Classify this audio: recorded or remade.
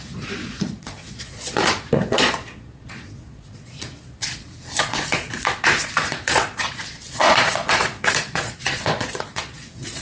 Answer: remade